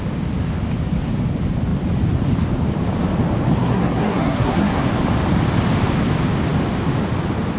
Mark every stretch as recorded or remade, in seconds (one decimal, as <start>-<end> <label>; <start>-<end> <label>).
0.0-3.5 recorded; 3.5-4.9 remade; 4.9-7.6 recorded

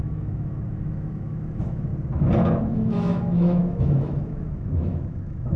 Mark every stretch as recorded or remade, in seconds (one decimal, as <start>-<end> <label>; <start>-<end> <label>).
0.0-1.9 remade; 1.9-2.6 recorded; 2.6-5.6 remade

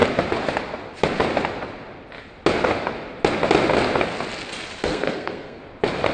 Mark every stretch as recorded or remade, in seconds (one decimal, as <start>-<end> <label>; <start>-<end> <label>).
0.0-4.8 recorded; 4.8-5.6 remade; 5.6-6.1 recorded

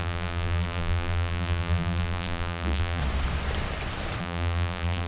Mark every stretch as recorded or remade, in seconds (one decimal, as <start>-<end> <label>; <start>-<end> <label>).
0.0-3.0 remade; 3.0-4.2 recorded; 4.2-5.1 remade

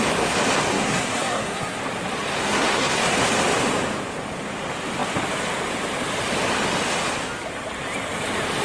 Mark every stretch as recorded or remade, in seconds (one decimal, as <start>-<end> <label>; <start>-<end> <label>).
0.0-0.7 recorded; 0.7-1.8 remade; 1.8-2.4 recorded; 2.4-3.0 remade; 3.0-8.6 recorded